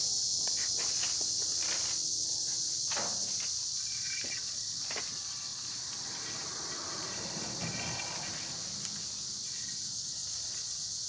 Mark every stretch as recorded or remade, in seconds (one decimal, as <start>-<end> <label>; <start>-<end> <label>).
0.0-11.1 recorded